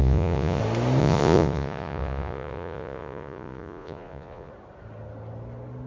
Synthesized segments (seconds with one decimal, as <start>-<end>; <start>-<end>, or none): 0.0-0.6; 1.0-4.5